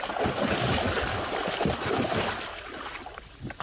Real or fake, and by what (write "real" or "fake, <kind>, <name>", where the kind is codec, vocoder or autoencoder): real